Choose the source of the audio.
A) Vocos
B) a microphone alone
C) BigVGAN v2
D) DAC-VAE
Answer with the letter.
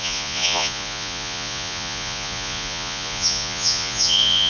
A